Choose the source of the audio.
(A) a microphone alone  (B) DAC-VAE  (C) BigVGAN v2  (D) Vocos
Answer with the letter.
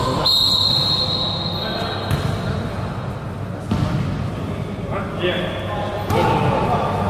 A